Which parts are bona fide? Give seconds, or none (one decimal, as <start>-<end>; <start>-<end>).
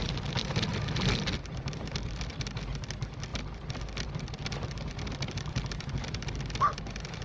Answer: 0.0-0.7; 2.3-3.3; 4.4-7.2